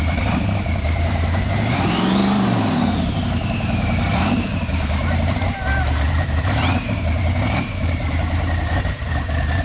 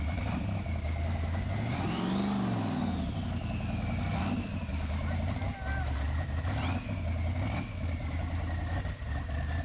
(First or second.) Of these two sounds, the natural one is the second